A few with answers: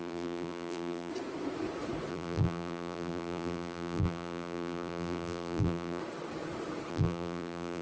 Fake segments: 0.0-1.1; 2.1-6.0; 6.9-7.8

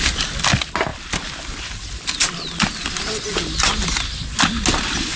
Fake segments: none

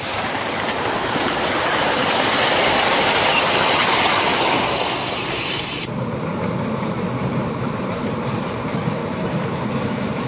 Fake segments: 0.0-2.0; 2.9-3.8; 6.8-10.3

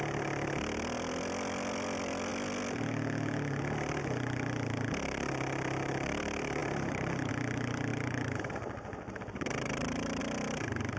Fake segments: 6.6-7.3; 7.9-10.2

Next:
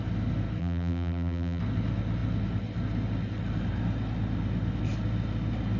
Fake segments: 0.6-1.6